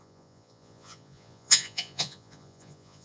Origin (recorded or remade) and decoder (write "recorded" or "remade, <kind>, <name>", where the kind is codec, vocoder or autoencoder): remade, vocoder, Vocos